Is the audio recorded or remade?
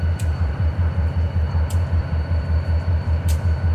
remade